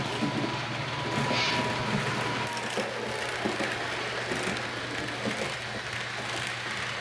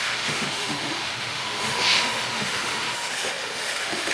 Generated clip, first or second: second